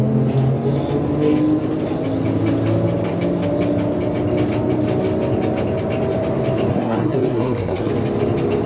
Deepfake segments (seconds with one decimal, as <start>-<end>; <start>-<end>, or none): 6.7-7.9